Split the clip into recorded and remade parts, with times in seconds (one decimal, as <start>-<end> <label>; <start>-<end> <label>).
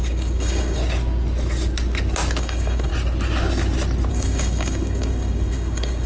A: 0.0-0.8 remade; 0.8-2.4 recorded; 2.4-2.9 remade; 2.9-4.1 recorded; 4.1-6.1 remade